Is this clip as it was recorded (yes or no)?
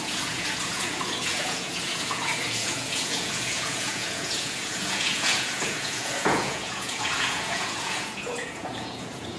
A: no